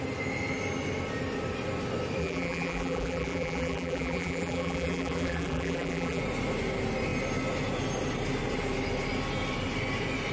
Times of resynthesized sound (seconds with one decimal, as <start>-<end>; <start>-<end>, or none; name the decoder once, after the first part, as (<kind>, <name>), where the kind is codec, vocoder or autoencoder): 2.2-6.2 (vocoder, BigVGAN v2)